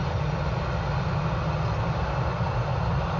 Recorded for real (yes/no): yes